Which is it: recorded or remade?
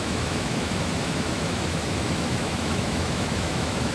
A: remade